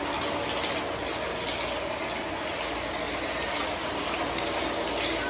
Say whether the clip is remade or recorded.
recorded